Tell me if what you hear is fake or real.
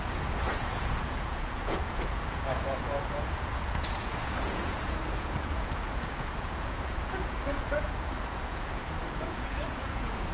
fake